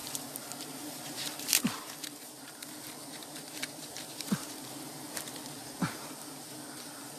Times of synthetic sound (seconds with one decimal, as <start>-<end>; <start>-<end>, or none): 0.0-2.6; 3.2-5.1; 5.6-6.5